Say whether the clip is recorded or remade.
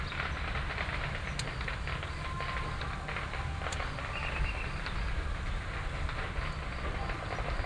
recorded